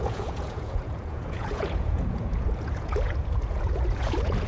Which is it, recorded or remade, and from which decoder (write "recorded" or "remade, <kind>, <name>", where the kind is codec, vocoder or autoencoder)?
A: remade, vocoder, Vocos